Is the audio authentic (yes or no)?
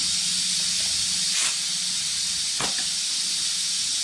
yes